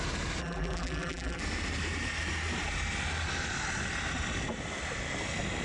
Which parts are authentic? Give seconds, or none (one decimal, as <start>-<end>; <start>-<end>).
0.0-0.4; 1.4-5.6